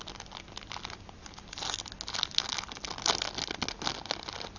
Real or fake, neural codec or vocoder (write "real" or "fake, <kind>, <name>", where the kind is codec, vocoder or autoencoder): real